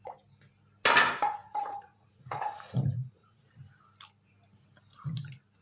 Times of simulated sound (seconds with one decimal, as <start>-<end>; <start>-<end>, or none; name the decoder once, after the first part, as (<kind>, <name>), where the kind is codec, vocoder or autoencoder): 1.4-3.5 (vocoder, Vocos)